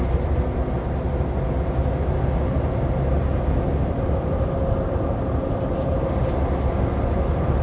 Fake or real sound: real